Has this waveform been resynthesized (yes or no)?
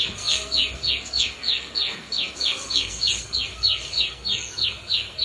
yes